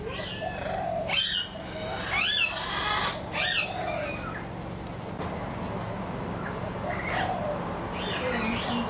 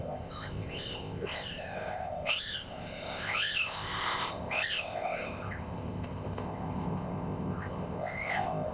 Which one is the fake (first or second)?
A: second